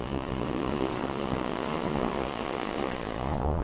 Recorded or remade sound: remade